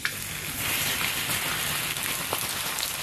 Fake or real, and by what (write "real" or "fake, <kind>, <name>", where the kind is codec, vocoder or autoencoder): real